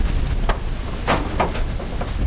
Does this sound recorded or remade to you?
recorded